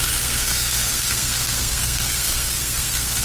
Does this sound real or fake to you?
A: fake